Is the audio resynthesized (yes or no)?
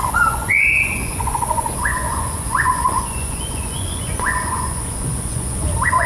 yes